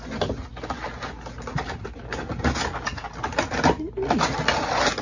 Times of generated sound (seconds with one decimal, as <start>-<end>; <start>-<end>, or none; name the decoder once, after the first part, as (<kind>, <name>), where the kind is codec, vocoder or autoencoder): none